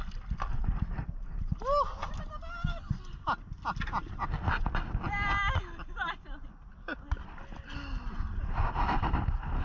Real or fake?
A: real